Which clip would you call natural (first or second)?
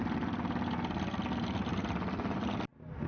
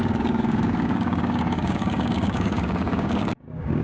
first